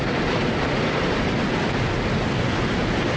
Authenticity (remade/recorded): recorded